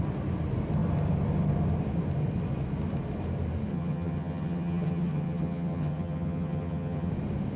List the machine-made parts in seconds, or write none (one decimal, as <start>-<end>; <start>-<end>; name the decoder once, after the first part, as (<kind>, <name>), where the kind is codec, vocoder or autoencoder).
3.7-7.1 (vocoder, HiFi-GAN)